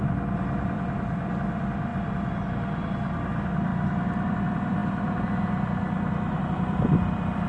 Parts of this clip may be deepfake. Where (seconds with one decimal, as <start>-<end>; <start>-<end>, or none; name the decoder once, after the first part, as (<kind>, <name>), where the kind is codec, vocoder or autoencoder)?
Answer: 0.0-3.7 (vocoder, BigVGAN v2); 4.3-7.5